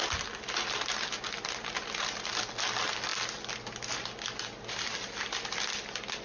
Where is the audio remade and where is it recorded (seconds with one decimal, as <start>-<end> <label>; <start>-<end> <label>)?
0.0-6.2 recorded